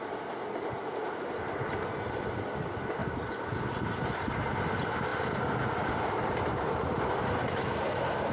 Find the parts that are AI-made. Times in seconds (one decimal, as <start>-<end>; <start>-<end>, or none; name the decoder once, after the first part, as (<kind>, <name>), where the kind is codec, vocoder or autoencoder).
3.0-3.6 (vocoder, BigVGAN v2); 7.4-8.3